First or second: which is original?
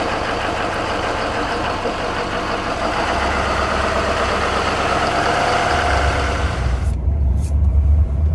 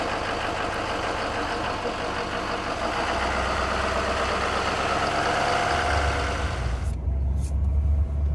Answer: second